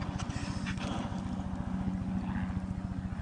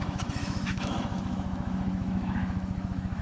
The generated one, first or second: second